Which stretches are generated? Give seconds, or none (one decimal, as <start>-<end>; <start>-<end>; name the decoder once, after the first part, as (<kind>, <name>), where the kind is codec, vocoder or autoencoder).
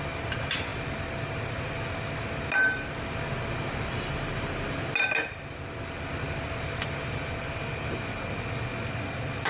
none